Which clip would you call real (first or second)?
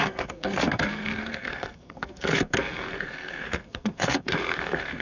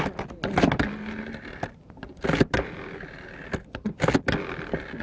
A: second